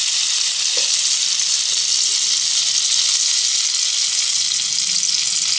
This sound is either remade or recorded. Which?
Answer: recorded